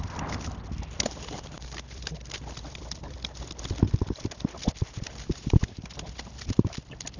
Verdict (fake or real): fake